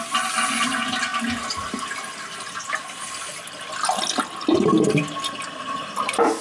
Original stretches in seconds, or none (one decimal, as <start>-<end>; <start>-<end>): 0.0-5.4